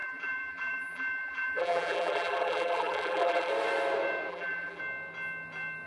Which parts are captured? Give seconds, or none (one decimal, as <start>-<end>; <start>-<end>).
3.5-4.3; 4.8-5.9